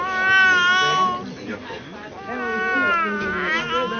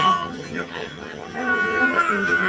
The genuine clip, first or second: first